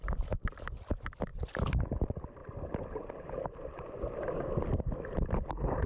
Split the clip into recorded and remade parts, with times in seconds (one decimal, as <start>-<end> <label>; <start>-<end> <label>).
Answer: 0.0-2.4 recorded; 2.4-3.1 remade; 3.1-5.9 recorded